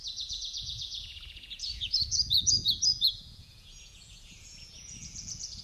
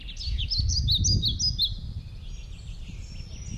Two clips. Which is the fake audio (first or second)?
first